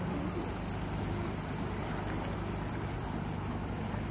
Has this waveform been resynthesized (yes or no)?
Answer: no